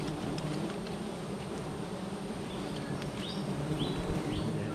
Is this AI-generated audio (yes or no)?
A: yes